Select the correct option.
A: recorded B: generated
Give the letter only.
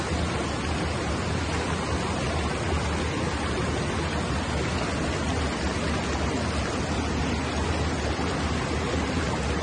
A